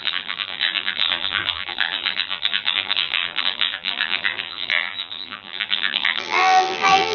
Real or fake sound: fake